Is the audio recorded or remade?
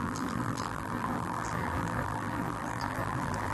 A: remade